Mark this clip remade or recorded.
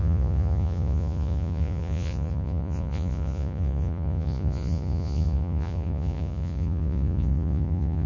remade